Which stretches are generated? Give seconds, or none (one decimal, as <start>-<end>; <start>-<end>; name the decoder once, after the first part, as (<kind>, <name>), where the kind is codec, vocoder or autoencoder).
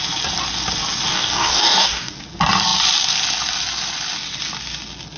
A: 1.1-2.1 (codec, DAC)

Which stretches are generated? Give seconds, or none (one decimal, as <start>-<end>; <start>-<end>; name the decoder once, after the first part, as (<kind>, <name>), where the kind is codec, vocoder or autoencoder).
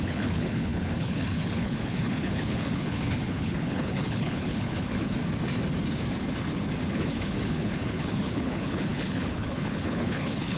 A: 0.0-5.2 (codec, HILCodec); 6.9-10.6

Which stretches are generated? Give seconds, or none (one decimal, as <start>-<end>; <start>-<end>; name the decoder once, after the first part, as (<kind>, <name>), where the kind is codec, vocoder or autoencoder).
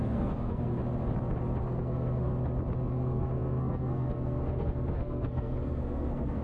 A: 0.0-0.8 (codec, SNAC); 1.6-2.3; 2.9-6.4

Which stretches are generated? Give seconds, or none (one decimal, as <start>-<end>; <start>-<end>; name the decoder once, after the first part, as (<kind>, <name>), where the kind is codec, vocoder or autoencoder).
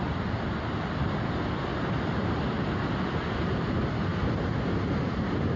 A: none